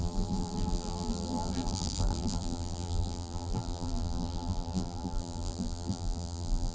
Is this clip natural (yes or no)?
no